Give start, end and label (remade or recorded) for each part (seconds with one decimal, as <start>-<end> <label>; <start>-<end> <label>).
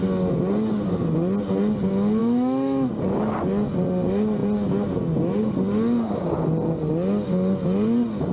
0.0-2.2 recorded; 2.2-2.9 remade; 2.9-8.3 recorded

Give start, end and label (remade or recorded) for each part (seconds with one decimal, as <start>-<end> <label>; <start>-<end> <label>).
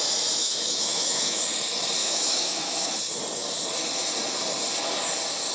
0.0-0.4 recorded; 0.4-1.4 remade; 1.4-2.0 recorded; 2.0-3.0 remade; 3.0-5.5 recorded